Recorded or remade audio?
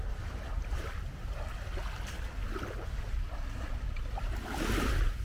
recorded